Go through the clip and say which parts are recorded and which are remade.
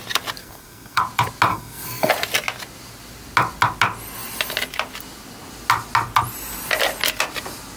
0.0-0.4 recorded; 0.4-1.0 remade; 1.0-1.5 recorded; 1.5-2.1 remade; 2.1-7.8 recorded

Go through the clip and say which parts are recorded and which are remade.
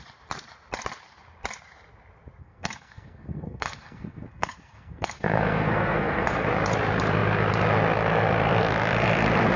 0.0-2.4 recorded; 2.4-6.5 remade; 6.5-9.6 recorded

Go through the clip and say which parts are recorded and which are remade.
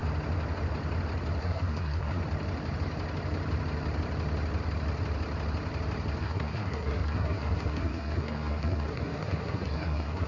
0.0-1.4 recorded; 1.4-2.2 remade; 2.2-6.2 recorded; 6.2-10.3 remade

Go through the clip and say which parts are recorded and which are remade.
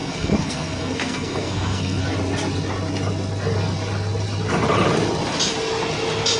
0.0-2.0 remade; 2.0-6.4 recorded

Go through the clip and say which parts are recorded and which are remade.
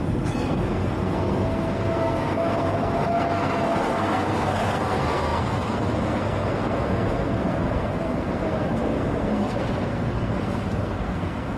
0.0-11.6 remade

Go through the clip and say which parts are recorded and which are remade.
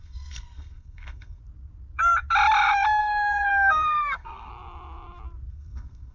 0.0-1.4 remade; 1.4-3.0 recorded; 3.0-4.5 remade; 4.5-5.5 recorded; 5.5-6.1 remade